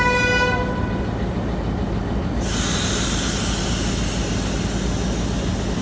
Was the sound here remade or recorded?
recorded